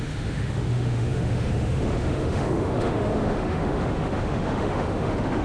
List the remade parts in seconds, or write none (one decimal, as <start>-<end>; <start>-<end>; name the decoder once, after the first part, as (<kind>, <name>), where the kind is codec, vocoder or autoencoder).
0.0-5.4 (autoencoder, DAC-VAE)